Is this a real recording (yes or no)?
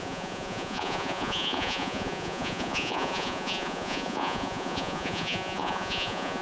no